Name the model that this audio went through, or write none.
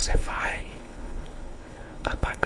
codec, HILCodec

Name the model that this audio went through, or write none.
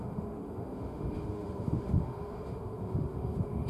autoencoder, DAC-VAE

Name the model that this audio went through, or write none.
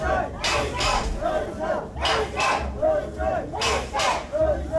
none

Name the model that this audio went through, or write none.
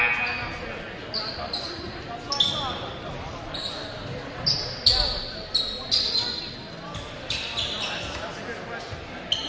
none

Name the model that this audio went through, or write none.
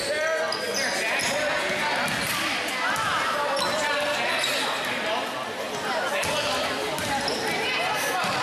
none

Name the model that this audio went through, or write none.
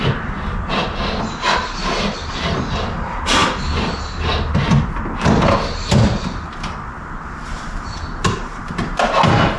none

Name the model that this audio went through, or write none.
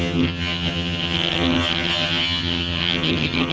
vocoder, HiFi-GAN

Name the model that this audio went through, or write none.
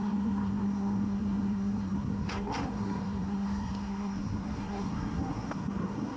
codec, SNAC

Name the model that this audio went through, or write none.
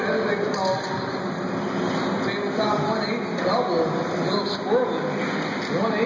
none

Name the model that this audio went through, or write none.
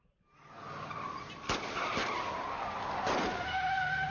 none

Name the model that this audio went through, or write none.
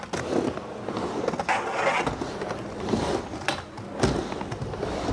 none